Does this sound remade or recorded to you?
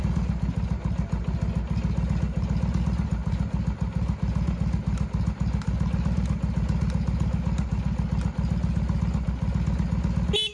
recorded